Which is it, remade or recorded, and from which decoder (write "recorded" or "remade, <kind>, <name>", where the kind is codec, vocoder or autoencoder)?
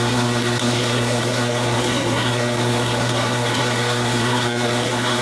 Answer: remade, codec, SNAC